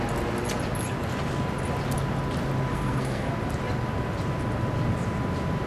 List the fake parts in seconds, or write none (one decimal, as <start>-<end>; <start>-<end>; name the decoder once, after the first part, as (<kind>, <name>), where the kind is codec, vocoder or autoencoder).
2.7-3.3 (codec, SNAC)